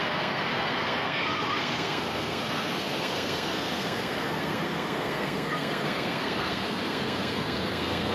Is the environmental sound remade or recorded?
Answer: remade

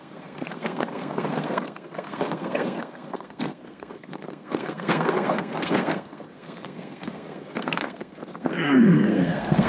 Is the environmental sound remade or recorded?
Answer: remade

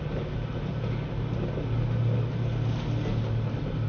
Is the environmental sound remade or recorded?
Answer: recorded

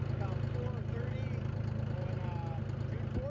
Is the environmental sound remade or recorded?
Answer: recorded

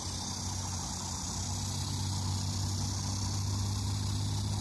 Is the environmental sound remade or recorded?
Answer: recorded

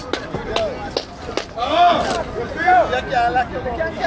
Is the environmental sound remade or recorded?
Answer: recorded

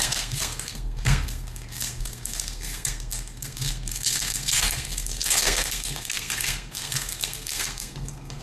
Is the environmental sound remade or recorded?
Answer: remade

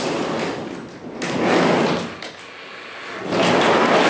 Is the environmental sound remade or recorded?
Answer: recorded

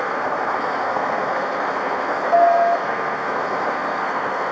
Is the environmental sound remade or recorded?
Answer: remade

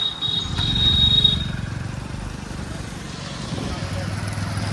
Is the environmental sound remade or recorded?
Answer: recorded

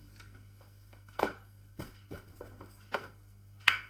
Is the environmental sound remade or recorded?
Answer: remade